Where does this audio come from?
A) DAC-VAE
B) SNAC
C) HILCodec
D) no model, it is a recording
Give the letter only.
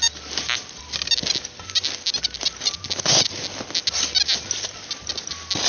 D